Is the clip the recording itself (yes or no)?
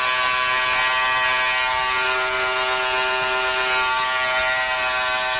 yes